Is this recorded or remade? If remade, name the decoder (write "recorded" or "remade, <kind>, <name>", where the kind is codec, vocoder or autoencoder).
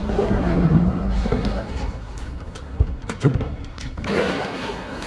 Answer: remade, codec, SNAC